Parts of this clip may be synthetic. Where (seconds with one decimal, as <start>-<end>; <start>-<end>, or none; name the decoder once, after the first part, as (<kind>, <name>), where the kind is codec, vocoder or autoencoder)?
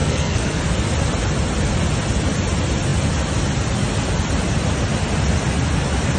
0.0-0.6 (codec, SNAC)